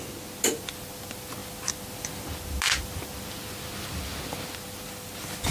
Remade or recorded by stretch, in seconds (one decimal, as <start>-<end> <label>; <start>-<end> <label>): 0.0-5.5 recorded